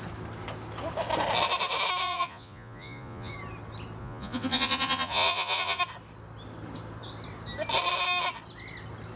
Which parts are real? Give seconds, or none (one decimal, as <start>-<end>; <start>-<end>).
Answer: 0.0-2.0; 3.3-4.0; 5.8-9.2